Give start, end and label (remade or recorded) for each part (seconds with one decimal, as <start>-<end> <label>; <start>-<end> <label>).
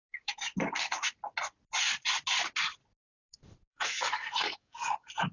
0.0-0.5 remade; 0.5-3.7 recorded; 3.7-5.3 remade